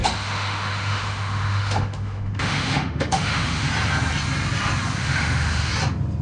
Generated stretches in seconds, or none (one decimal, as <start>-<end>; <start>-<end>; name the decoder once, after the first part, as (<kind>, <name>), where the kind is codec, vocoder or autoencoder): 0.0-3.7 (autoencoder, DAC-VAE); 5.0-5.7